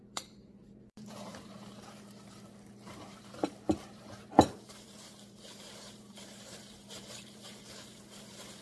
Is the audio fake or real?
fake